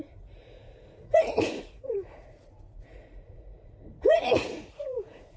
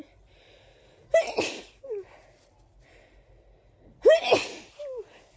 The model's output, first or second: first